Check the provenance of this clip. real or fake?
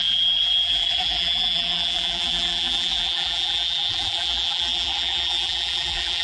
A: fake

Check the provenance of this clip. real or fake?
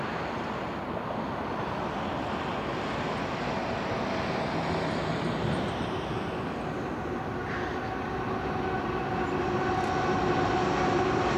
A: real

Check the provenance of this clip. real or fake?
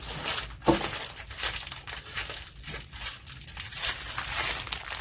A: real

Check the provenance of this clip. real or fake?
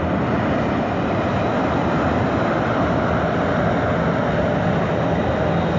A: real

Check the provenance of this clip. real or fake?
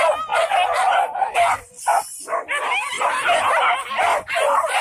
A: real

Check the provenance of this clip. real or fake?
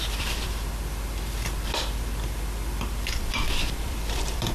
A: fake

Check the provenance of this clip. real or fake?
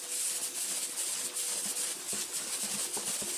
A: real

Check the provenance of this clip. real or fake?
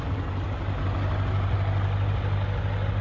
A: fake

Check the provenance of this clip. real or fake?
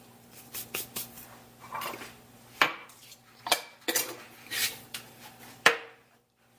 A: fake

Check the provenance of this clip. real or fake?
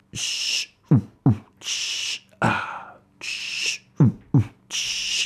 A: real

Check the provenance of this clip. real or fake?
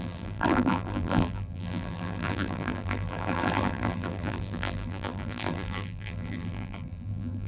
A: fake